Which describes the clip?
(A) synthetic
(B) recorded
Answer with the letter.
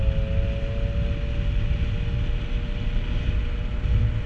B